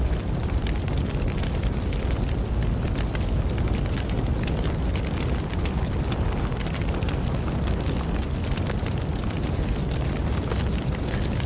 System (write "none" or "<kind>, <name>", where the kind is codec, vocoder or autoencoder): none